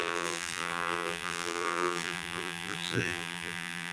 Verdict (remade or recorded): remade